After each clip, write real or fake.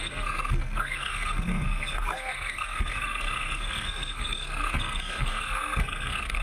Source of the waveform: fake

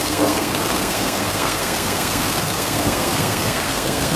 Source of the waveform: fake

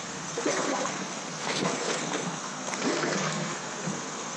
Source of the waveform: fake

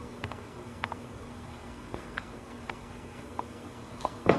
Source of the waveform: fake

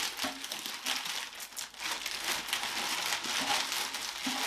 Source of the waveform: real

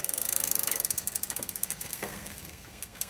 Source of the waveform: fake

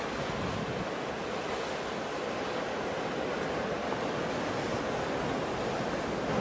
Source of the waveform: real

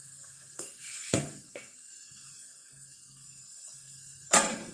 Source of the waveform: fake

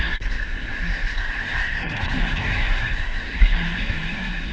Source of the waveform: fake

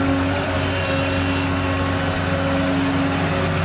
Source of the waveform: real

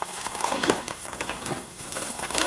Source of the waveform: fake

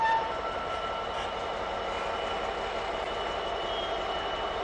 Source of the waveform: real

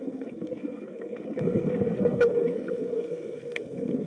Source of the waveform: fake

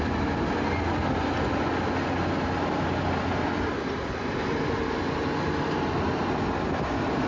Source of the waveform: real